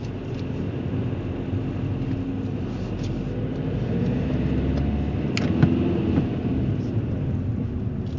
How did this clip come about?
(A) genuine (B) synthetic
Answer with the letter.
A